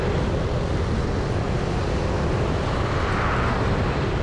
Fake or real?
real